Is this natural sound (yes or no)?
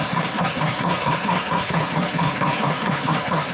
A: no